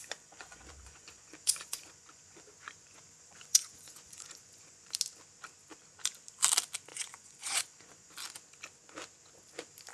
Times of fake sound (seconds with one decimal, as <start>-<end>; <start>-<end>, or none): 0.0-4.9; 6.9-8.1